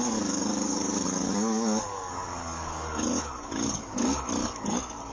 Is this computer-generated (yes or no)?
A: yes